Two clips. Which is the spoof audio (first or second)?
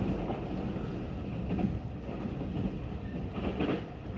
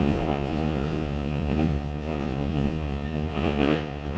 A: second